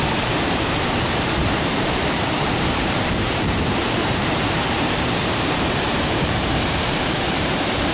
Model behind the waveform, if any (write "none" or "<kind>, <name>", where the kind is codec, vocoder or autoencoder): vocoder, BigVGAN v2